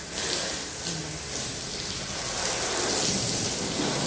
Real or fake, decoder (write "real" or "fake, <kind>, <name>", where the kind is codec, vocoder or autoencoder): real